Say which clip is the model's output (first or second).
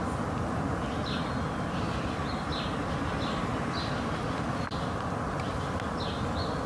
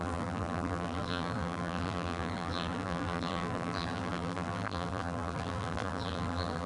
second